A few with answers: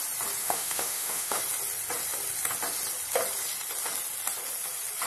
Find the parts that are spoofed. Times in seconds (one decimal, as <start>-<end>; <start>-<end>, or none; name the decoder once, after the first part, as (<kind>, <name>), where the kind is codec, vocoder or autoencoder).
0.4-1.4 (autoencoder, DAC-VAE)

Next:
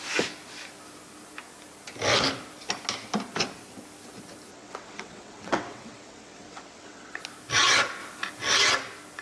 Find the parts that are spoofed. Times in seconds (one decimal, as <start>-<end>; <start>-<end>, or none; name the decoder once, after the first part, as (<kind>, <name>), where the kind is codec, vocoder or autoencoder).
4.5-7.2 (vocoder, WaveNeXt)

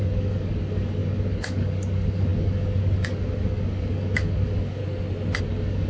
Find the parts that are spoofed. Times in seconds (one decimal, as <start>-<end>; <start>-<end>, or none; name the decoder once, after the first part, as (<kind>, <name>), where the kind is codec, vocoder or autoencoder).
0.0-4.8 (codec, DAC); 5.4-5.9

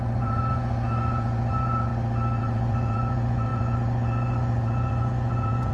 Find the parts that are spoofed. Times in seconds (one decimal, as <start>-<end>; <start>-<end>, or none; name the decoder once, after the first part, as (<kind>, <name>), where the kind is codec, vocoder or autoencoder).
0.0-1.9 (vocoder, Vocos); 2.4-5.7

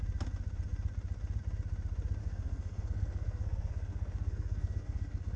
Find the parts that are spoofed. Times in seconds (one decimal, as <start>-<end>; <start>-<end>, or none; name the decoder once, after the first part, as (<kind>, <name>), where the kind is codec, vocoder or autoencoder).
2.2-5.4 (codec, SNAC)

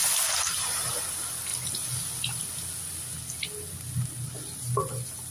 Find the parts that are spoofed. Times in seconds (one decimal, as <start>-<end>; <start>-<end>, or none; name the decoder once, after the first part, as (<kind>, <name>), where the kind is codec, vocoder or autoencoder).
none